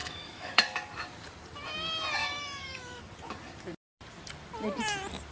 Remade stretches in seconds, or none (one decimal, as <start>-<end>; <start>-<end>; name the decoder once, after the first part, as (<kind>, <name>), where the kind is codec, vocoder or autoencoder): 0.0-0.6 (autoencoder, DAC-VAE); 2.2-3.0